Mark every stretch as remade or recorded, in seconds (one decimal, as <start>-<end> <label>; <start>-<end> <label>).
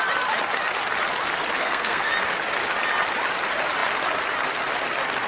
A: 0.0-1.6 recorded; 1.6-2.1 remade; 2.1-5.3 recorded